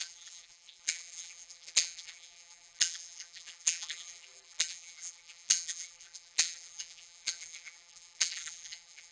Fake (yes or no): yes